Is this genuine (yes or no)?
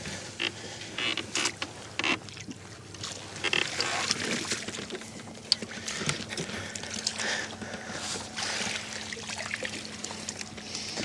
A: yes